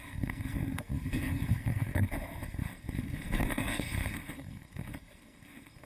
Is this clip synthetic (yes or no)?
yes